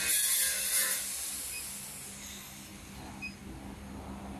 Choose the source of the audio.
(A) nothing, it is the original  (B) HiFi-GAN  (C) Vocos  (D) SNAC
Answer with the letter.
A